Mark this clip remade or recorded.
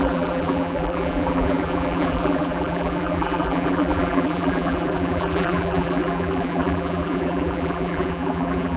remade